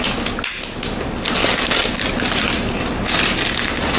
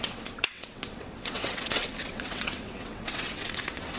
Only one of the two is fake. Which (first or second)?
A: second